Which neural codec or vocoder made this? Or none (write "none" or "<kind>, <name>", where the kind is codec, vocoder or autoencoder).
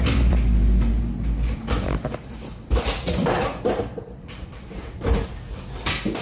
vocoder, BigVGAN v2